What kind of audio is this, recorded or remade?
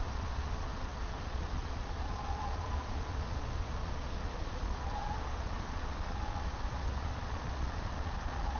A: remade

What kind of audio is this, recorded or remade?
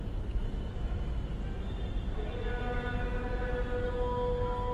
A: recorded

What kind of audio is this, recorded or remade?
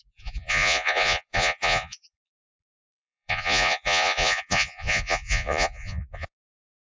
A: remade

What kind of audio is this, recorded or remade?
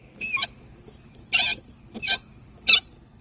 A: recorded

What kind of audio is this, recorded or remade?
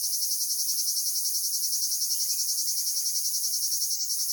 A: recorded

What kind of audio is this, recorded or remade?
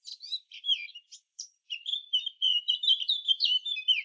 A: remade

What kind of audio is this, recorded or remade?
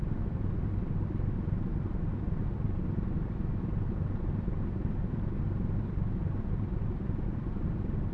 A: recorded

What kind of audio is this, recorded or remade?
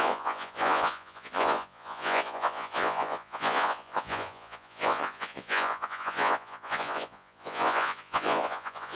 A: remade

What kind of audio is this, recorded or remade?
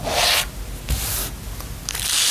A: recorded